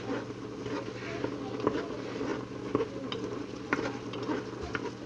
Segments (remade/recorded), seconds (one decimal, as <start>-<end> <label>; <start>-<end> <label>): 0.0-5.1 recorded